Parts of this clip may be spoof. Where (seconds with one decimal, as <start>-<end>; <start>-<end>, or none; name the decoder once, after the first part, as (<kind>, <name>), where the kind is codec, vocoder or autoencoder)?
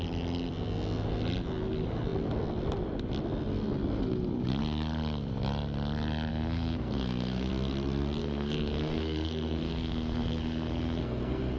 6.3-7.5 (codec, SNAC); 8.2-11.6